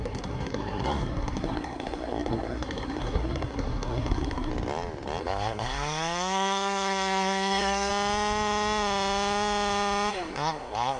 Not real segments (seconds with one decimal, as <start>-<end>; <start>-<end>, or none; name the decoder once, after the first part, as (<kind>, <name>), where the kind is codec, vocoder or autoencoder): 0.0-4.5 (codec, SNAC); 5.2-7.9; 10.1-11.0